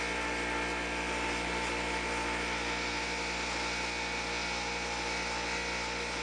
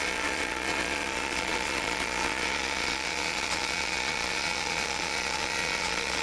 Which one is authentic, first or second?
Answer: first